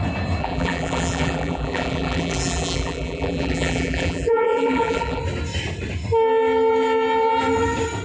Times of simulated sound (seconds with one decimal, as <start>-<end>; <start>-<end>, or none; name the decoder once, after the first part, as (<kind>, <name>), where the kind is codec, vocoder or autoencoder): 0.4-5.2 (vocoder, BigVGAN v2)